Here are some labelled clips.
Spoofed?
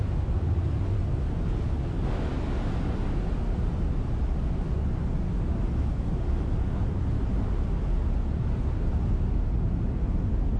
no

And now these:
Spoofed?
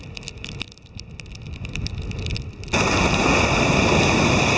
no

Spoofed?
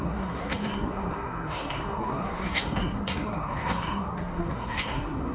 yes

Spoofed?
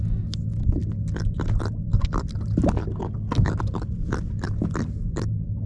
no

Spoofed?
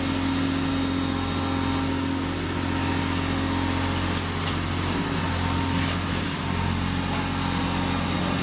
no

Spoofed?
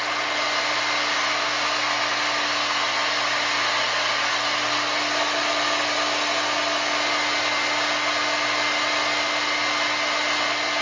no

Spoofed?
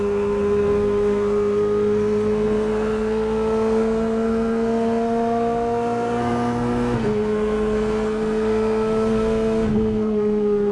yes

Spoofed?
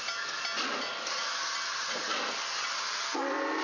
no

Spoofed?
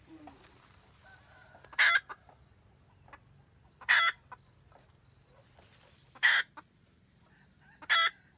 no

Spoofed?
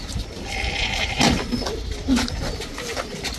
no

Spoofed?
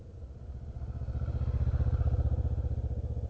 no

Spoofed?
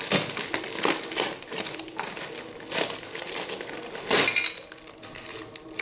no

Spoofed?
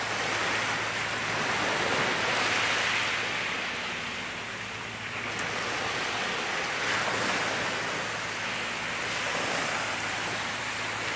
no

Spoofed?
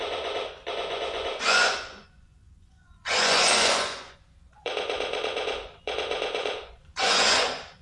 yes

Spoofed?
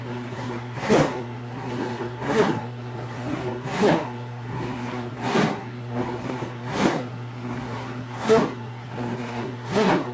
yes